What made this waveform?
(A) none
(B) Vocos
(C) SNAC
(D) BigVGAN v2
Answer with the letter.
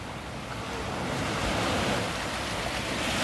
A